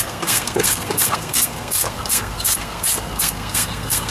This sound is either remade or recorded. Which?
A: remade